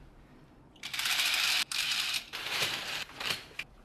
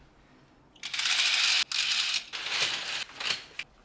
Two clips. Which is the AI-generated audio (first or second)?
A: first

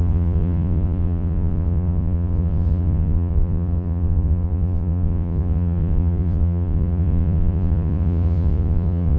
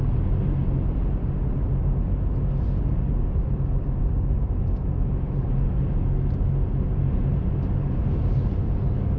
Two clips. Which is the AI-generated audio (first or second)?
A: first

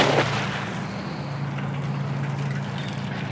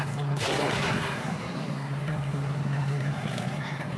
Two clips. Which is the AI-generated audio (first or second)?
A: second